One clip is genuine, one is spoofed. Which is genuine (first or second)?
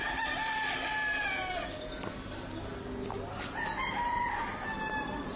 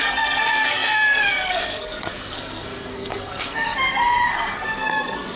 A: first